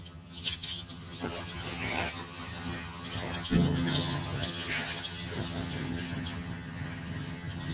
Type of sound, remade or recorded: remade